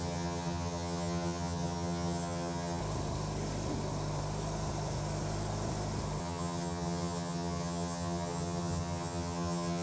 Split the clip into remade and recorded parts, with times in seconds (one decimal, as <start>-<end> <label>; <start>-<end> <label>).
0.0-2.8 remade; 2.8-6.2 recorded; 6.2-9.8 remade